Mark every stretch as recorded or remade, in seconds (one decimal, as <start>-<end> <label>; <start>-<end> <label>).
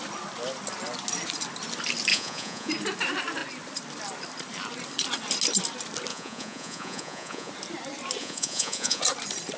0.0-2.1 recorded; 2.1-2.7 remade; 2.7-6.1 recorded; 6.1-7.5 remade; 7.5-8.2 recorded; 8.2-9.0 remade; 9.0-9.6 recorded